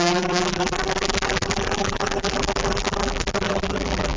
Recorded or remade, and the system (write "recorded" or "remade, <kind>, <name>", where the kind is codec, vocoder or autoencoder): remade, vocoder, BigVGAN v2